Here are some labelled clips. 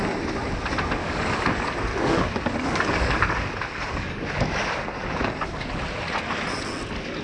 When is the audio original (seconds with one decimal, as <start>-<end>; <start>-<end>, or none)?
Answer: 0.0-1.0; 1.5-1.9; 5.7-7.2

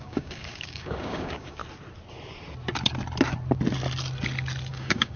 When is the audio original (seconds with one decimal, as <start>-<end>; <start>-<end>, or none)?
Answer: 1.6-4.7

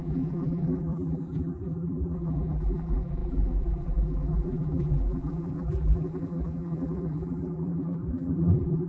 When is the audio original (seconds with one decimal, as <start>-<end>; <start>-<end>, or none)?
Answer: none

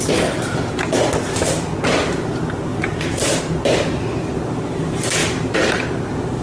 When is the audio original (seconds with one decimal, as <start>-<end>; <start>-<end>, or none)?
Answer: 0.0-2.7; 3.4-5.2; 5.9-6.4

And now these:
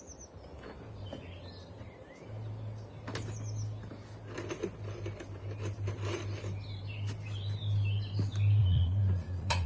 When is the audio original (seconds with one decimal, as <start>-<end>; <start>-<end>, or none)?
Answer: 0.0-8.6

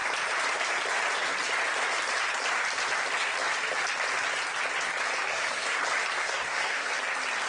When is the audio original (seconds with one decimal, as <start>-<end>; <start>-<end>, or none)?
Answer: 0.0-5.3; 5.8-6.2; 6.9-7.5

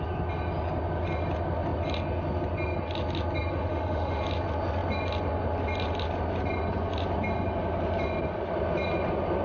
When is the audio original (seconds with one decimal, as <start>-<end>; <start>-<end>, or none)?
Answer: 0.0-3.7; 4.2-9.4

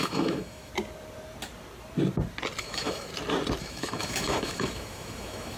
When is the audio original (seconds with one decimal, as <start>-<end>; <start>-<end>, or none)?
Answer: 0.7-2.6; 3.1-3.6